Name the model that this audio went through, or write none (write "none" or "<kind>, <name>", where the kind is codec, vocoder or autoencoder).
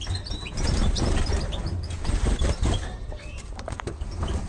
vocoder, BigVGAN v2